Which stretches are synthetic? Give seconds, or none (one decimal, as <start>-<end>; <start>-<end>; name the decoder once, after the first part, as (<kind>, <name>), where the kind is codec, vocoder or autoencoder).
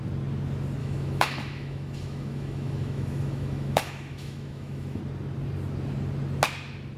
0.8-5.0 (autoencoder, DAC-VAE)